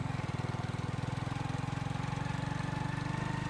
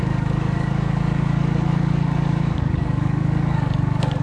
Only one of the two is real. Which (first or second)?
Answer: first